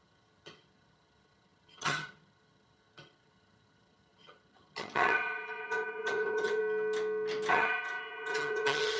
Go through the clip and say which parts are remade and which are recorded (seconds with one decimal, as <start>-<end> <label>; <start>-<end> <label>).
0.0-6.6 remade; 6.6-7.5 recorded; 7.5-9.0 remade